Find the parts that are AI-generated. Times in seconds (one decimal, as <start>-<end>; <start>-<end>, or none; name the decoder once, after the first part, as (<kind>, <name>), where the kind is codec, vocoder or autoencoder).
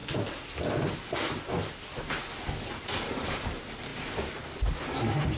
2.7-3.9 (vocoder, BigVGAN v2)